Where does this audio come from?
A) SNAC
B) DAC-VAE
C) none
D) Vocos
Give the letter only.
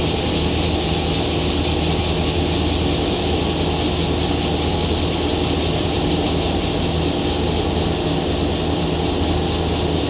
C